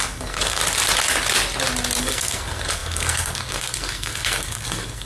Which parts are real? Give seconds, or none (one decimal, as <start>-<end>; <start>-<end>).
0.6-2.0